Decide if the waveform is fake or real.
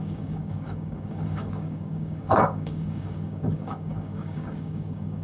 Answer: fake